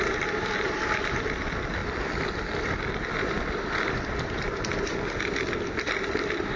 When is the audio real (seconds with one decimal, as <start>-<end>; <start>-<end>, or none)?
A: 1.8-5.8